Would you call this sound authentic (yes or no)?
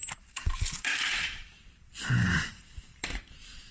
no